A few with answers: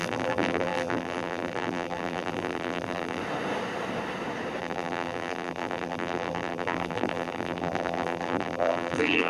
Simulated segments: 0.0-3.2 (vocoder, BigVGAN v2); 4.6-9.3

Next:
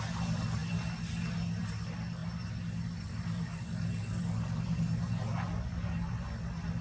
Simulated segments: 2.2-4.2 (vocoder, BigVGAN v2)